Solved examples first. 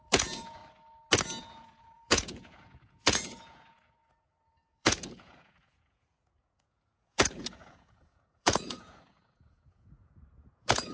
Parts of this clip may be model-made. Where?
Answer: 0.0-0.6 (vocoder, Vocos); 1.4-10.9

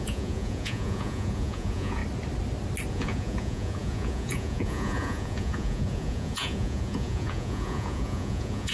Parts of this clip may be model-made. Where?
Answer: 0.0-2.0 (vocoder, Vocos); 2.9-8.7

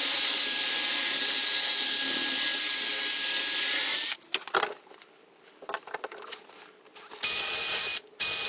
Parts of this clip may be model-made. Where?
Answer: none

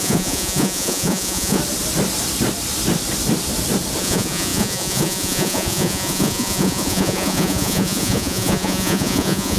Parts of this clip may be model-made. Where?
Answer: 0.0-1.6 (vocoder, Vocos); 4.0-9.6

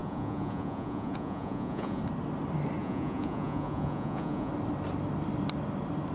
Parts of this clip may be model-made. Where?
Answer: 0.0-2.0 (vocoder, Vocos); 2.8-4.5